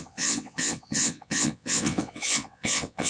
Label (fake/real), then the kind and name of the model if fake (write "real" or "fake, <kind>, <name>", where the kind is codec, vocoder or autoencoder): fake, vocoder, WaveNeXt